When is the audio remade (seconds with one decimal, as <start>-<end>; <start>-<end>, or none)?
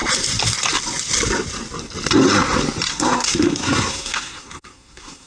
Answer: 2.9-5.3